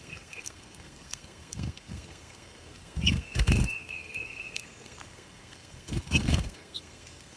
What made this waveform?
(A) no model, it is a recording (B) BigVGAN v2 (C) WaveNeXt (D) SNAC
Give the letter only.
D